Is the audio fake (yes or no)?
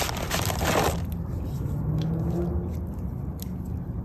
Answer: no